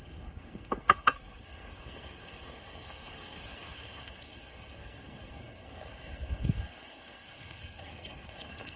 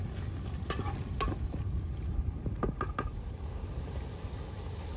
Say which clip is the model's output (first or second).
first